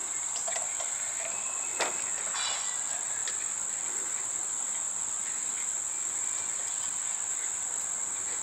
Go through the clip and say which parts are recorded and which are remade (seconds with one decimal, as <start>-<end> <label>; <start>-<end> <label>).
0.0-1.5 remade; 1.5-8.4 recorded